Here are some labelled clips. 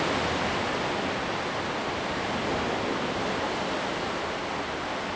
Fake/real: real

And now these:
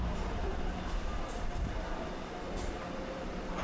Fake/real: fake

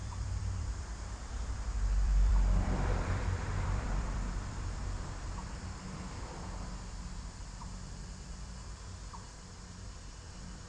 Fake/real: fake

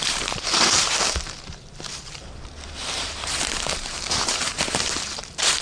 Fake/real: fake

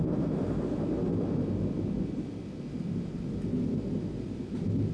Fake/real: real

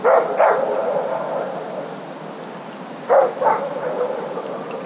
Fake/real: real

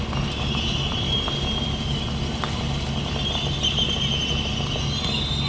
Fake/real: real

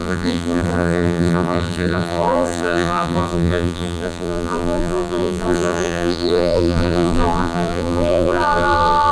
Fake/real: fake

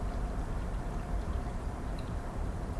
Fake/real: fake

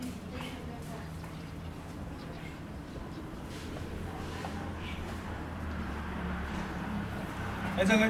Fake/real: fake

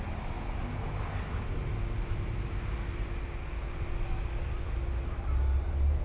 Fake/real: real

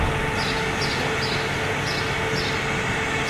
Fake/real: real